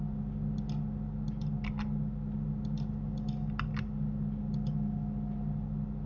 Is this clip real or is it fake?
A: real